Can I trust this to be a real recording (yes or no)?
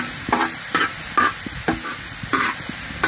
yes